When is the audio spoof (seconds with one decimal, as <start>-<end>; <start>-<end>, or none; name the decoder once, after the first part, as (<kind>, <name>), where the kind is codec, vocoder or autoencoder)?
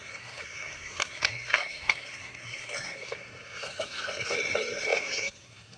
0.0-5.8 (codec, SNAC)